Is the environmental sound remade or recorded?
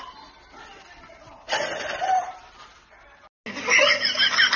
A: recorded